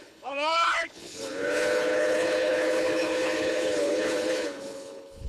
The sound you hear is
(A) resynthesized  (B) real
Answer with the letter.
A